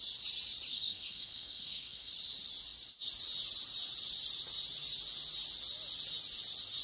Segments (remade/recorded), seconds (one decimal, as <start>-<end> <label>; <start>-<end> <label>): 0.0-0.7 recorded; 0.7-2.1 remade; 2.1-6.8 recorded